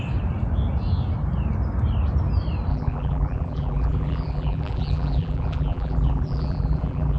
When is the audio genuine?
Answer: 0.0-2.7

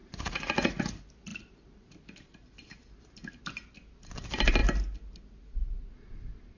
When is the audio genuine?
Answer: 0.9-6.6

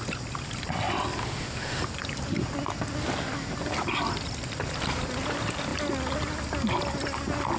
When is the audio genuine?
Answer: 0.0-1.2; 1.8-7.6